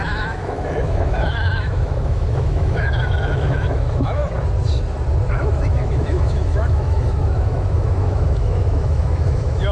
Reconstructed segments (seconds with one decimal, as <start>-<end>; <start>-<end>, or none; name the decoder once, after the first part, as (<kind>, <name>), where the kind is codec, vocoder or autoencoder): 0.0-4.2 (autoencoder, DAC-VAE); 5.3-9.7